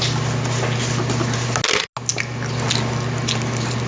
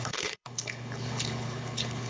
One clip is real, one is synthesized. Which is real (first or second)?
first